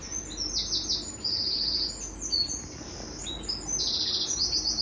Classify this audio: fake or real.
real